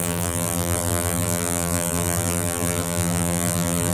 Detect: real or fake fake